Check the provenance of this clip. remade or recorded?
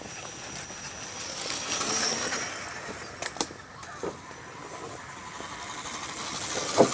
recorded